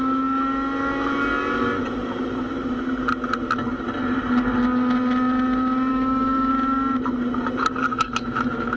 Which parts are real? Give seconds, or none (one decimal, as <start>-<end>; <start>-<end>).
0.0-5.9; 6.5-7.9